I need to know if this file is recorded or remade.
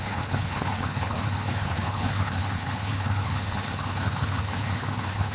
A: remade